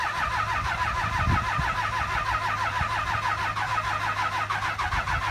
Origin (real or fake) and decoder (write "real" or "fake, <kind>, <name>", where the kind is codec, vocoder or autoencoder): real